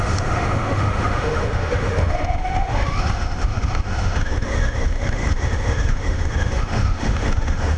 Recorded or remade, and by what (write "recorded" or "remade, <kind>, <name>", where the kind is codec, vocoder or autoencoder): remade, autoencoder, DAC-VAE